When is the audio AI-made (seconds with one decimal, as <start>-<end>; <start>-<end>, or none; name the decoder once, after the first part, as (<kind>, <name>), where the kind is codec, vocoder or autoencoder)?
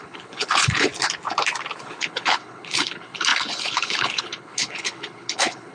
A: 0.0-0.9 (codec, HILCodec); 1.8-5.7